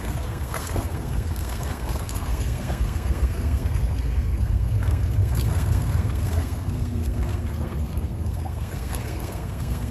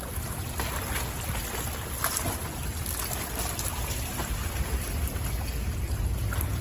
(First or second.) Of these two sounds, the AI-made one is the first